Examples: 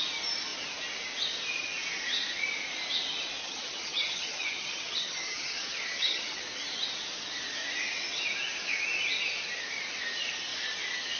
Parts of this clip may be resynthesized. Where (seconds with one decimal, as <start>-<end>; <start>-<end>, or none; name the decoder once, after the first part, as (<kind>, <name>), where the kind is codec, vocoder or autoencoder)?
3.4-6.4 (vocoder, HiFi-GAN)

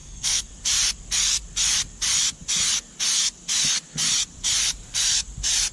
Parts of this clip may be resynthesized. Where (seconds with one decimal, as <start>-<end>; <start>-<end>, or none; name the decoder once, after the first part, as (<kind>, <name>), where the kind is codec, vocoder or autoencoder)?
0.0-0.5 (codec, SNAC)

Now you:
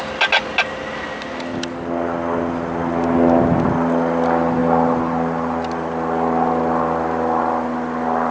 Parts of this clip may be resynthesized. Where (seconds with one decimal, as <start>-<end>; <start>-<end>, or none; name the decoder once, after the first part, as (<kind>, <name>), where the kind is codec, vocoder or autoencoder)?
none

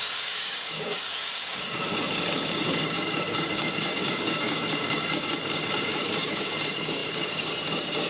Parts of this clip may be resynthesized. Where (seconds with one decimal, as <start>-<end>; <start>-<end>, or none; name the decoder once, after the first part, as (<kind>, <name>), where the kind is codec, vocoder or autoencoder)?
0.0-8.1 (codec, DAC)